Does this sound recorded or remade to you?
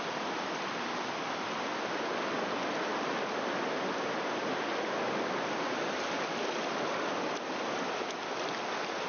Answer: recorded